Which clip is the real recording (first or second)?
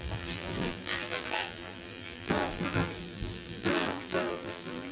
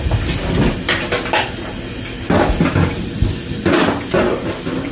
second